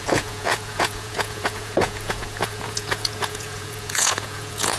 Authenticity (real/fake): fake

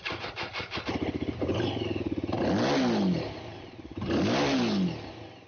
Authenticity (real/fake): real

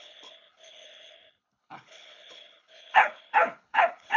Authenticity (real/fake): fake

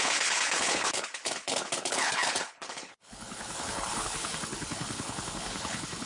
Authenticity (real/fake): fake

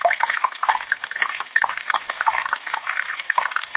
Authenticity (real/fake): fake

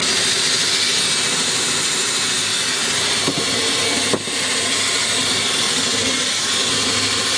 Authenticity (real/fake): real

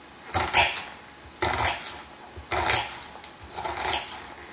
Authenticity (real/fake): real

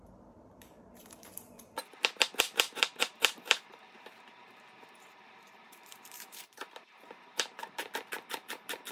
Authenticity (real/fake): fake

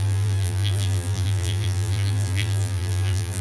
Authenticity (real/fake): fake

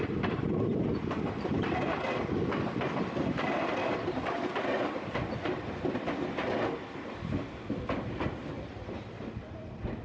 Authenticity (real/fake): real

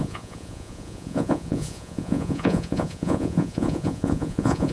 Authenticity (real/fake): fake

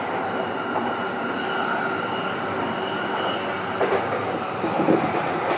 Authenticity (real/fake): real